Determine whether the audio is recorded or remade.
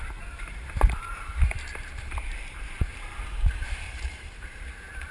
remade